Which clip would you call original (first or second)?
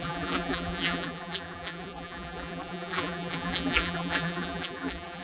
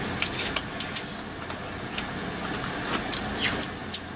second